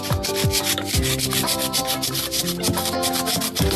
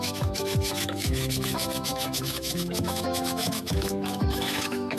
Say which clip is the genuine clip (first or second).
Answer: first